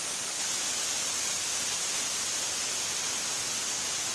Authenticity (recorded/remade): recorded